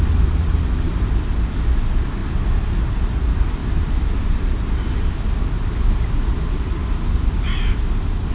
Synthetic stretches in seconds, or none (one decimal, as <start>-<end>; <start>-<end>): 3.6-5.4